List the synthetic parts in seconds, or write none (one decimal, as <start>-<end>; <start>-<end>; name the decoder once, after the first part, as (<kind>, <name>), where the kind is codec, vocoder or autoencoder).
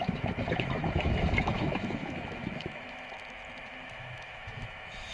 0.0-3.1 (autoencoder, DAC-VAE); 3.6-5.1